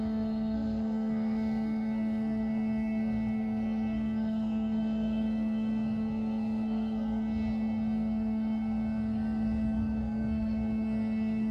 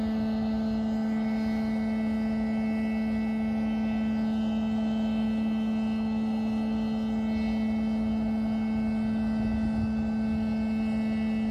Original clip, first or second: second